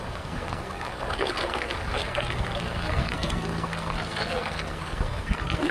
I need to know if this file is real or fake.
fake